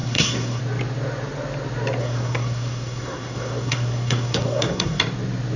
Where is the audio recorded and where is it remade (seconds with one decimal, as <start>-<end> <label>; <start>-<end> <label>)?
0.0-0.6 remade; 0.6-2.0 recorded; 2.0-5.0 remade; 5.0-5.6 recorded

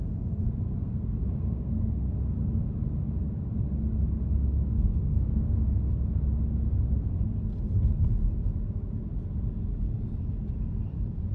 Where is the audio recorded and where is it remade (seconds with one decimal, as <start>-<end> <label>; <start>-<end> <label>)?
0.0-0.8 recorded; 0.8-2.1 remade; 2.1-4.9 recorded; 4.9-5.9 remade; 5.9-11.3 recorded

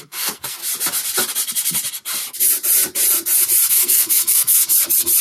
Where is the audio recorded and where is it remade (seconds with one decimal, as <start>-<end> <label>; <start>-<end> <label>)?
0.0-0.6 remade; 0.6-3.7 recorded; 3.7-4.6 remade; 4.6-5.2 recorded